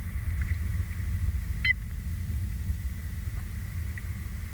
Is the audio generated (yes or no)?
no